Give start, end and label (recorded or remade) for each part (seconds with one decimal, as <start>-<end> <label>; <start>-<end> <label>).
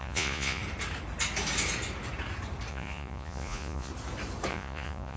0.0-0.6 remade; 0.6-2.7 recorded; 2.7-3.9 remade; 3.9-4.5 recorded; 4.5-5.2 remade